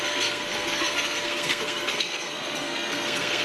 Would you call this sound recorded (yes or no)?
no